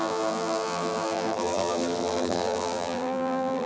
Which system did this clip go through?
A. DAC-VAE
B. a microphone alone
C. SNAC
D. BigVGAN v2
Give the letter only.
D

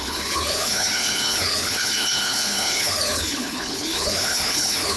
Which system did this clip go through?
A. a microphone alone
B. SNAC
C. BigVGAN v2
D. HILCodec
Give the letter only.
D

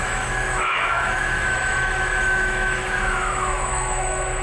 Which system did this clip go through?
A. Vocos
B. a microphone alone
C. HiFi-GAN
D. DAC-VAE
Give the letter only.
D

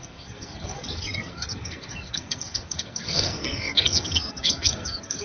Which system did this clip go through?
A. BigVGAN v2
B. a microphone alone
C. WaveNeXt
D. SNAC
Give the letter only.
D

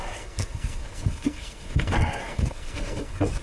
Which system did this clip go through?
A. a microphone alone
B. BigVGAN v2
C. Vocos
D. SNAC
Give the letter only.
D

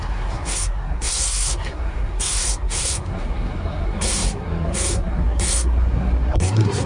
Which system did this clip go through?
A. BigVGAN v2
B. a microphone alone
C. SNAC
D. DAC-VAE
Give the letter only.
C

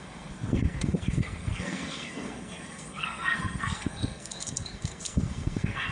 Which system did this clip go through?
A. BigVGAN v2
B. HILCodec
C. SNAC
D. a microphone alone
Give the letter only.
C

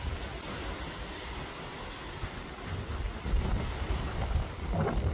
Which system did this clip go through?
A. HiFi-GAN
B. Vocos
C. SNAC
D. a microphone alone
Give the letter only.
D